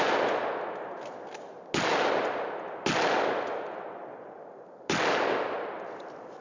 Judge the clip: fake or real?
real